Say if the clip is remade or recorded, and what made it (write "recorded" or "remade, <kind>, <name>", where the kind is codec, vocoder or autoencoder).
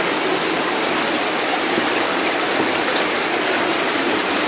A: recorded